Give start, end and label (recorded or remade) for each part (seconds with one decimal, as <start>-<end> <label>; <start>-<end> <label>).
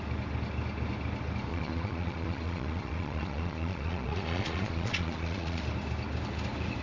0.0-1.5 recorded; 1.5-5.6 remade; 5.6-6.8 recorded